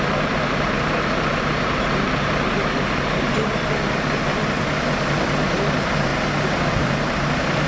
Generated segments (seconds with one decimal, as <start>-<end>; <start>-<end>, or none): 0.0-6.1; 6.7-7.7